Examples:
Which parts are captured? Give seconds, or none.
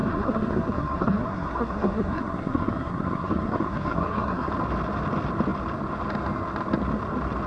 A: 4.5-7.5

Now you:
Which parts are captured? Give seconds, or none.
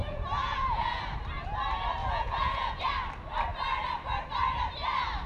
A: 1.0-2.0; 2.8-5.3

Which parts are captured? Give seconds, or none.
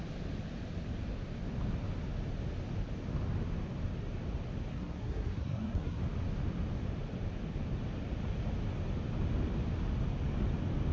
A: 0.0-4.7; 6.0-10.9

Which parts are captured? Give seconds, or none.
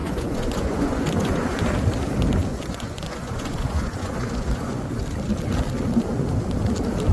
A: 1.6-2.5; 4.8-7.1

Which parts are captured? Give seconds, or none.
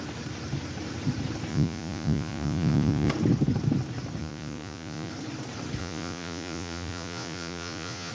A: 0.0-1.5; 3.1-4.2; 5.1-5.8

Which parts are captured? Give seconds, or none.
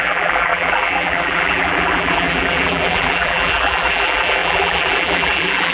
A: none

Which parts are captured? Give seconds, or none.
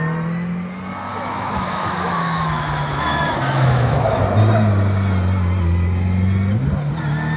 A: 0.0-1.1; 4.2-7.4